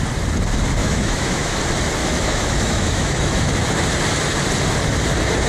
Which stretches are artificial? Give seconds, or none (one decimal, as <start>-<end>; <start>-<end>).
0.8-1.6; 2.0-3.5